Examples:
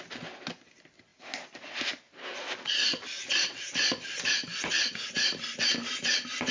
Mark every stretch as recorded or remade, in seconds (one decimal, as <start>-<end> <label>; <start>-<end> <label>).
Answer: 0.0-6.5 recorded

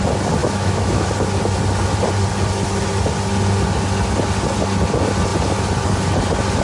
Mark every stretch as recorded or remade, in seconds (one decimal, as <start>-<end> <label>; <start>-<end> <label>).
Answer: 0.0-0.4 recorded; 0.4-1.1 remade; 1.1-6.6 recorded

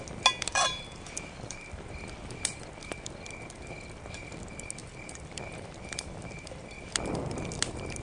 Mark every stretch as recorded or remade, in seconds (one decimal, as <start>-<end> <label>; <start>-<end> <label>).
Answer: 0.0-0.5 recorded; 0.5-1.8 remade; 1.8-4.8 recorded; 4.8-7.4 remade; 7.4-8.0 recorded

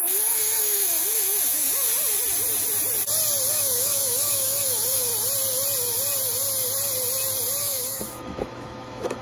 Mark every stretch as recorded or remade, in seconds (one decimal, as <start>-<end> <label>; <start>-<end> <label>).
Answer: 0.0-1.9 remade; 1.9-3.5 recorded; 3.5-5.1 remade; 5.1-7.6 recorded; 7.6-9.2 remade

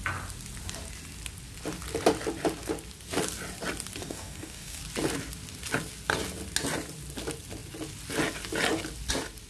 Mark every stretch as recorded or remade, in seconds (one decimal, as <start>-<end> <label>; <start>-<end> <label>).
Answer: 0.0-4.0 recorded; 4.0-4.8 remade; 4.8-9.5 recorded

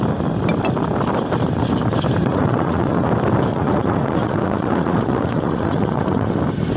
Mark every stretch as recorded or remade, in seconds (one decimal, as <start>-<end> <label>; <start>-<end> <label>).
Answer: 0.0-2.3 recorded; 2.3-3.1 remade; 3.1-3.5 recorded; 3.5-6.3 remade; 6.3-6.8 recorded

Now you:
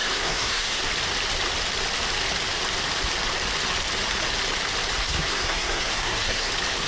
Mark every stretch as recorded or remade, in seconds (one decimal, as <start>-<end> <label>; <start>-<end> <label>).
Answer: 0.0-0.8 remade; 0.8-5.0 recorded; 5.0-6.5 remade; 6.5-6.9 recorded